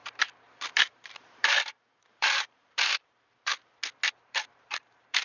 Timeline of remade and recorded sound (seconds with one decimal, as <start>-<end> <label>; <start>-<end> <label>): 0.0-3.5 remade; 3.5-4.1 recorded; 4.1-5.2 remade